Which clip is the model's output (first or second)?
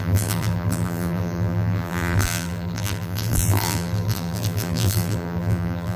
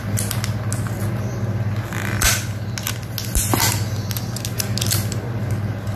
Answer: first